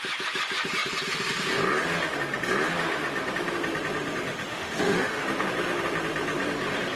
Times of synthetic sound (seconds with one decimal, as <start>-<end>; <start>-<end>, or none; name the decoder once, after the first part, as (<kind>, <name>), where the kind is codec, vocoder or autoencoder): 4.5-5.2 (autoencoder, DAC-VAE)